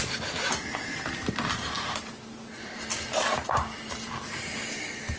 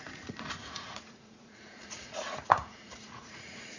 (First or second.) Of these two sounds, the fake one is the second